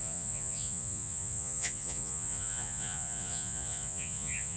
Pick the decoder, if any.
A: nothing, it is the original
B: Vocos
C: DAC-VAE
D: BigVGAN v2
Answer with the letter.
B